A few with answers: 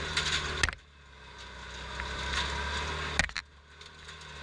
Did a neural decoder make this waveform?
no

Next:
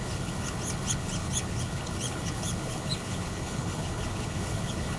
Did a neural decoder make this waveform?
yes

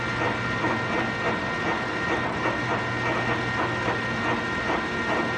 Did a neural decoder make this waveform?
no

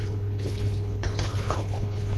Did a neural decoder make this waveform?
yes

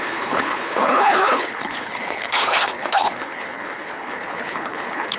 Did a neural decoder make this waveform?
yes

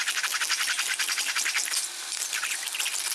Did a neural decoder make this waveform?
no